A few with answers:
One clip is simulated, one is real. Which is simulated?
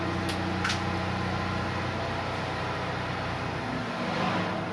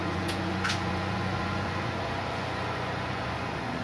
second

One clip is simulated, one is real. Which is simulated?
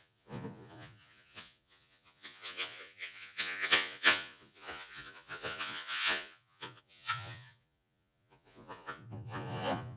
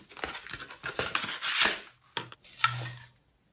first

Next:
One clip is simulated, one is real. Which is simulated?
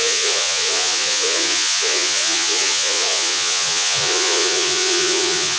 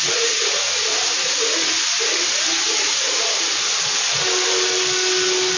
first